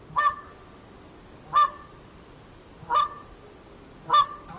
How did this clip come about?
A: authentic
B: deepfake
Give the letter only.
A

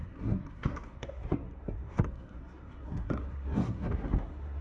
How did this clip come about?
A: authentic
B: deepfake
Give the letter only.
B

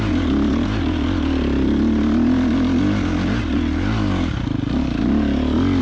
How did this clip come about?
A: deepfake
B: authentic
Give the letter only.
B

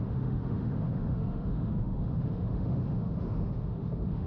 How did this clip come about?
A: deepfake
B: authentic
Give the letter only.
A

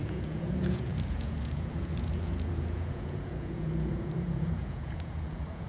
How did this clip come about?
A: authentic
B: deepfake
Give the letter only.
B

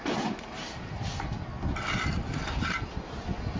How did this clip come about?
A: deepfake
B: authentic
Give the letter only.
A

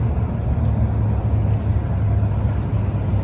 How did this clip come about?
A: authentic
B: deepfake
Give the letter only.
A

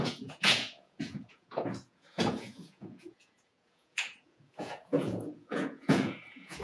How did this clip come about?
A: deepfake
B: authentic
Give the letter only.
A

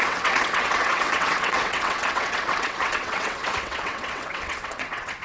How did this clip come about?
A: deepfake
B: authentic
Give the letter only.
A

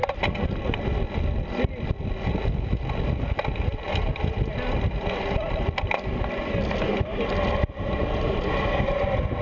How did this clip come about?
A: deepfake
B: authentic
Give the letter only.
B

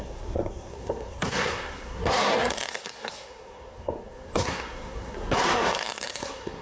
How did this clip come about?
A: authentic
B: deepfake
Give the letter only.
B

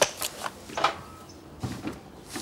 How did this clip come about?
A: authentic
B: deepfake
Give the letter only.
A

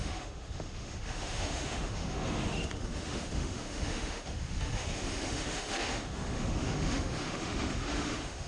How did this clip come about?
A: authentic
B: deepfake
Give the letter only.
B